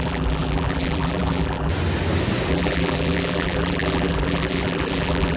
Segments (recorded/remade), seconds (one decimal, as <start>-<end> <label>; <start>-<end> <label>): 0.0-1.7 remade; 1.7-2.5 recorded; 2.5-5.4 remade